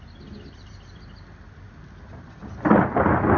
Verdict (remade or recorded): recorded